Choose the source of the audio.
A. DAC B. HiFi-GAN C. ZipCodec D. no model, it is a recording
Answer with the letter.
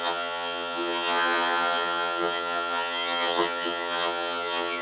B